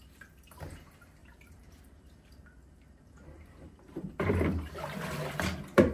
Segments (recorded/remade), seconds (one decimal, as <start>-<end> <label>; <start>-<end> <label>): 0.0-1.2 recorded; 1.2-4.7 remade; 4.7-5.9 recorded